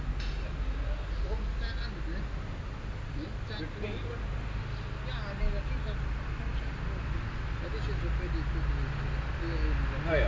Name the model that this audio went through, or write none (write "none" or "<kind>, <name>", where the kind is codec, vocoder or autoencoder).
none